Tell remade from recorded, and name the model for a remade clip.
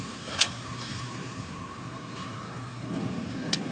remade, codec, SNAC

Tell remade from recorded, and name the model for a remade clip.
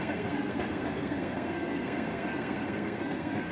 remade, codec, SNAC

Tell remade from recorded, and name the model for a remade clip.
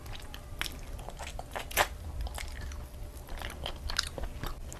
recorded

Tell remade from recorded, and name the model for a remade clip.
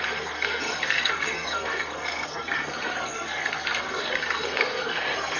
remade, codec, SNAC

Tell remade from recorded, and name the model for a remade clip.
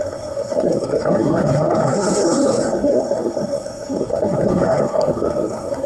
remade, codec, SNAC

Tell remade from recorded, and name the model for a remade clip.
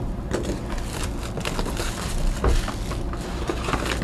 recorded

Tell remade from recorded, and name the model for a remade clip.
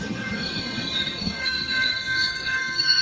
remade, codec, SNAC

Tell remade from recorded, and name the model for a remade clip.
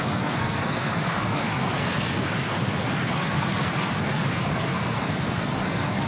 remade, codec, SNAC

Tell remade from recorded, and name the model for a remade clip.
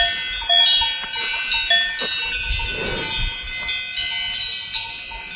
recorded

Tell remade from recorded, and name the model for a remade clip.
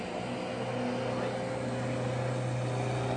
recorded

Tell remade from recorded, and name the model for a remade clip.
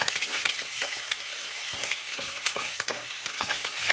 remade, codec, SNAC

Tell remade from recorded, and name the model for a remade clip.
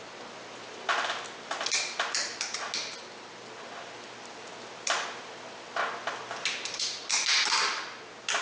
recorded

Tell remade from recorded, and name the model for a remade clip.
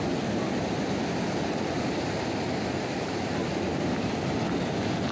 recorded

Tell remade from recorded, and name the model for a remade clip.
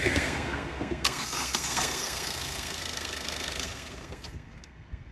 remade, codec, SNAC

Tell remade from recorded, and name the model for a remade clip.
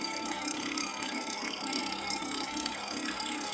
remade, codec, SNAC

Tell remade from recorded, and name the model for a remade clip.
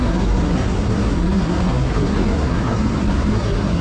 remade, codec, SNAC